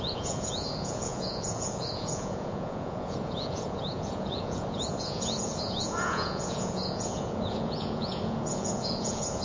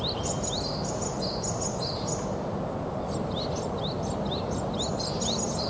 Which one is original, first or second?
second